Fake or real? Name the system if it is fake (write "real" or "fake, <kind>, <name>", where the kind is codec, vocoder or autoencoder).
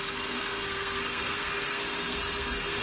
fake, codec, SNAC